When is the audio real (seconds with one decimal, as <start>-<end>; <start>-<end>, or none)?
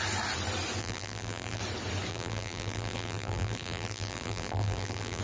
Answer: 0.0-0.8; 1.6-2.1